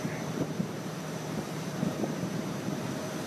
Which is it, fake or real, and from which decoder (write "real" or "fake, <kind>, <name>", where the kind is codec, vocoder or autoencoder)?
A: fake, vocoder, BigVGAN v2